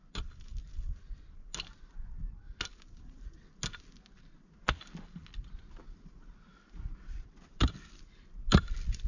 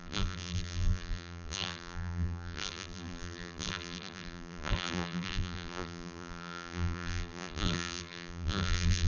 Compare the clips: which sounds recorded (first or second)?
first